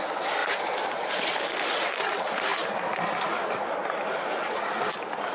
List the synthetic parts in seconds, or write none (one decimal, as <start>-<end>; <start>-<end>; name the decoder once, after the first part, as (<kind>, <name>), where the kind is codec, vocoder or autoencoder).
0.4-1.1 (vocoder, BigVGAN v2); 3.8-4.7